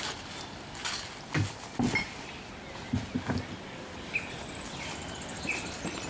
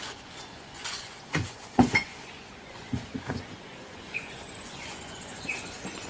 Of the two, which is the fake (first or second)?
second